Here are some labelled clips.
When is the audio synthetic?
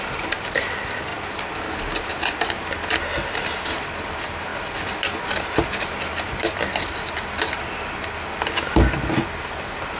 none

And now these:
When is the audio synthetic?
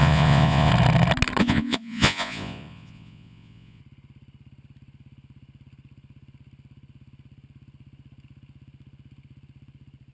0.0-0.7 (vocoder, Vocos); 1.4-3.8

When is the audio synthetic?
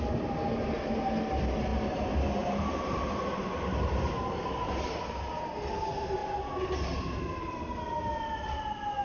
1.7-4.7 (vocoder, BigVGAN v2)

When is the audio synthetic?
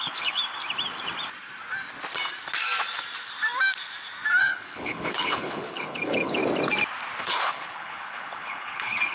0.0-0.4 (codec, HILCodec); 4.4-6.4; 7.2-9.1